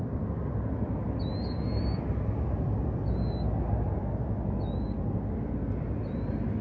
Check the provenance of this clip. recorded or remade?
recorded